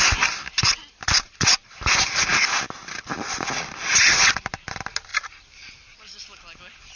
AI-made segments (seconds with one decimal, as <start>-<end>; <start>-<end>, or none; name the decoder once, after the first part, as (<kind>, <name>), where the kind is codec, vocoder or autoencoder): none